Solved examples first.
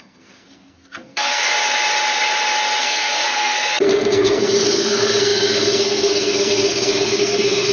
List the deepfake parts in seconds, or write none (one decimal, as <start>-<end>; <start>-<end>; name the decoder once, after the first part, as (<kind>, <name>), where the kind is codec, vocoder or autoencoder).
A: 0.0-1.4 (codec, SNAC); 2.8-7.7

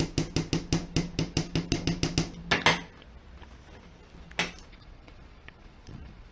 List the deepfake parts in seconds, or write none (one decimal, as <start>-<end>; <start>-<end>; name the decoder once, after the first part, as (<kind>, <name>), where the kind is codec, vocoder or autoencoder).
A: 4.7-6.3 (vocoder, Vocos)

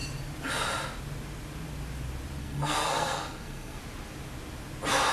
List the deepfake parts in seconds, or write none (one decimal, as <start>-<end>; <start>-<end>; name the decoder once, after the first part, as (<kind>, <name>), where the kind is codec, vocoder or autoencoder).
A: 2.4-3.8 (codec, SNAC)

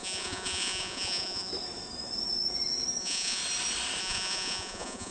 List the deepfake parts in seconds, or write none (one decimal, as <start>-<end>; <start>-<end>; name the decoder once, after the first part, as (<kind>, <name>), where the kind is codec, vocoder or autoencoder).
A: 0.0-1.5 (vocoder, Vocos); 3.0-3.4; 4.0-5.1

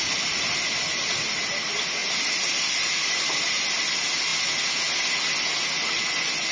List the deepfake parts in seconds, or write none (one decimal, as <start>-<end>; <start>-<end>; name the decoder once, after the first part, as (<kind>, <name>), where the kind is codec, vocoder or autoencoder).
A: none

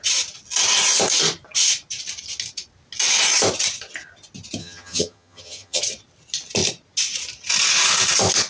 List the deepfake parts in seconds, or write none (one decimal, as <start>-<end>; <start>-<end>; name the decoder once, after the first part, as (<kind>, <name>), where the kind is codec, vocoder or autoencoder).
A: 4.6-5.8 (vocoder, HiFi-GAN)